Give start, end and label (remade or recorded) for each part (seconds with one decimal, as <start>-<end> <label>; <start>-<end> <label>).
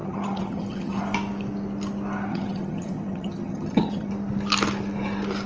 0.0-1.0 remade; 1.0-2.3 recorded; 2.3-4.1 remade; 4.1-5.5 recorded